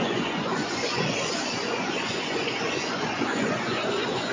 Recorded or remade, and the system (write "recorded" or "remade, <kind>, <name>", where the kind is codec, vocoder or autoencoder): remade, vocoder, Vocos